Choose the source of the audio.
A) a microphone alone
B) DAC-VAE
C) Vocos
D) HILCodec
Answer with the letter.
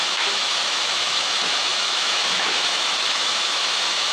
B